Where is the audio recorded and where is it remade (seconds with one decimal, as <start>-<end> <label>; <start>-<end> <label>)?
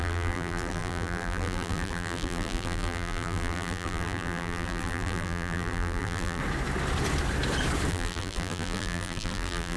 0.0-6.4 remade; 6.4-7.9 recorded; 7.9-9.8 remade